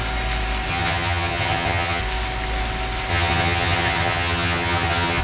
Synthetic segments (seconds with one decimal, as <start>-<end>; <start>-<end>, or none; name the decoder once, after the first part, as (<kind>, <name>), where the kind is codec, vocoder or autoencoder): 0.7-2.0 (vocoder, HiFi-GAN); 3.1-5.2